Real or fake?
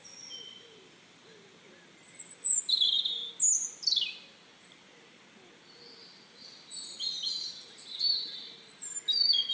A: real